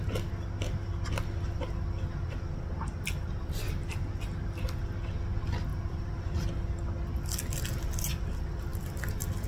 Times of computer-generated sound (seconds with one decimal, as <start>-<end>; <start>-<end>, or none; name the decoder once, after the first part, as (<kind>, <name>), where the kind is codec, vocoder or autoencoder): 5.7-6.5 (vocoder, BigVGAN v2)